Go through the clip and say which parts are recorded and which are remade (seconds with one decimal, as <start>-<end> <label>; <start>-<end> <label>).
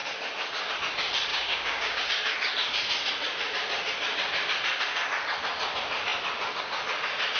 0.0-1.3 recorded; 1.3-2.0 remade; 2.0-7.4 recorded